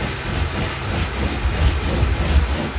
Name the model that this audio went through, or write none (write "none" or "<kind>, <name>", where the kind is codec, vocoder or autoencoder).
none